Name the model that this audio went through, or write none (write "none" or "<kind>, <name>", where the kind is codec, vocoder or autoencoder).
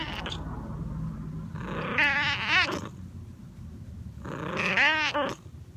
none